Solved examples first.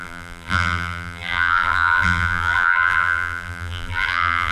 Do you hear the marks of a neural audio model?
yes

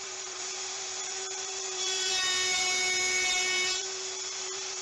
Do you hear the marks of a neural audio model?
yes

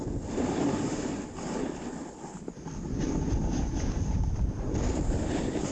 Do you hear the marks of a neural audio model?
no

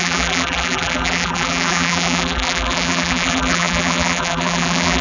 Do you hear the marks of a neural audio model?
yes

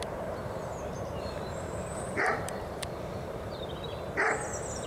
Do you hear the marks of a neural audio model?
yes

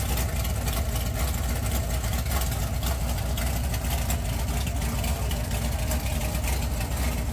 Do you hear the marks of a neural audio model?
no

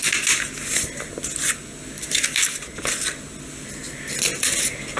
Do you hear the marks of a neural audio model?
no